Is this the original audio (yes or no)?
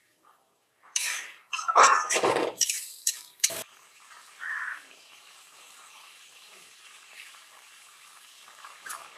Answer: no